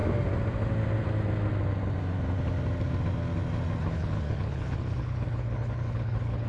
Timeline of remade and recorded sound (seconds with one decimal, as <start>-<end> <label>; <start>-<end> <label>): 0.0-3.8 recorded; 3.8-6.5 remade